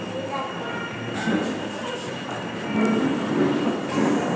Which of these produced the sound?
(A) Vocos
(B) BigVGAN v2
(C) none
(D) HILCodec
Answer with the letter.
C